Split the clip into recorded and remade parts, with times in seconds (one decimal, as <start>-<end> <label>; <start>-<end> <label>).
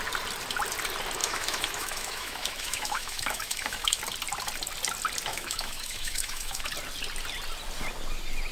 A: 0.0-1.2 recorded; 1.2-4.0 remade; 4.0-5.3 recorded; 5.3-6.7 remade; 6.7-8.5 recorded